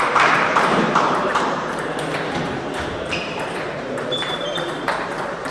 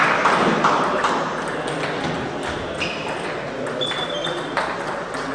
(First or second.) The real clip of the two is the second